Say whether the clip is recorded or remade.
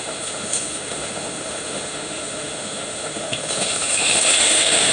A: remade